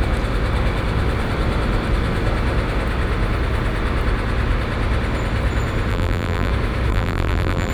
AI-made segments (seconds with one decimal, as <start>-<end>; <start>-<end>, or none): 5.9-6.5; 6.9-7.7